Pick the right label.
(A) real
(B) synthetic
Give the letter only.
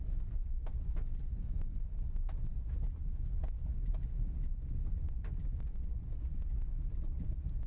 A